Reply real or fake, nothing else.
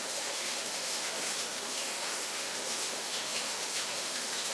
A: fake